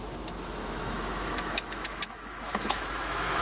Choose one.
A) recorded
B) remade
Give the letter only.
B